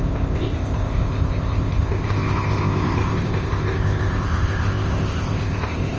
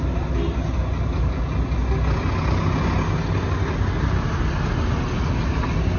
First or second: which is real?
second